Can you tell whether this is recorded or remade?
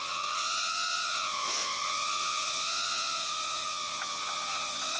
remade